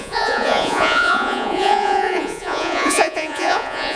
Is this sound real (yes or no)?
no